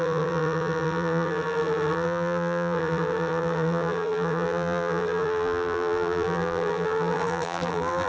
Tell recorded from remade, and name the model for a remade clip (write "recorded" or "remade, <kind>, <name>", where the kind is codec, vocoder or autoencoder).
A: remade, vocoder, BigVGAN v2